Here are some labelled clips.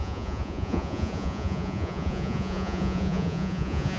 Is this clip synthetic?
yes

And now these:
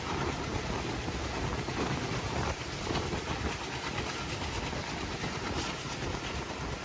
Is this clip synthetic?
no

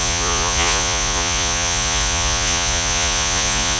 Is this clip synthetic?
yes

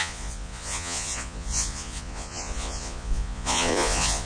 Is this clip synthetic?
yes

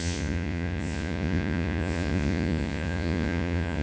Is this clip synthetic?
yes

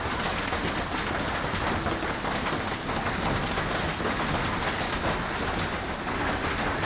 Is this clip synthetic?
no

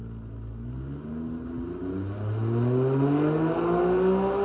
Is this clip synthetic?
no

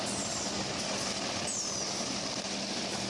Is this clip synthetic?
no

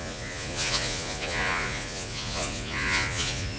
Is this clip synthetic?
yes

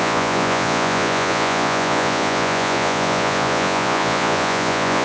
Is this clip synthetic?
yes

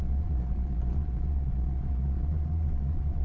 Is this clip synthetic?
yes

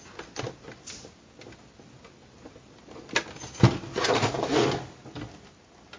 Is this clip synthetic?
no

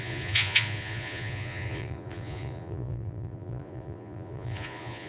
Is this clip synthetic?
yes